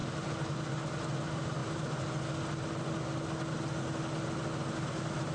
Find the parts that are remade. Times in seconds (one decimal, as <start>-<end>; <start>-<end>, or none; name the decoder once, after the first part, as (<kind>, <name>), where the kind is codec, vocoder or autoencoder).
none